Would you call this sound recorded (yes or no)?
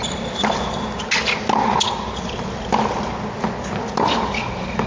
yes